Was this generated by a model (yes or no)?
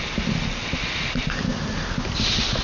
no